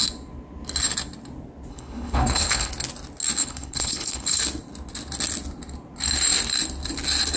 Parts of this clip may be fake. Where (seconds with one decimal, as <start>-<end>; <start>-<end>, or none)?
1.7-2.7; 3.4-4.4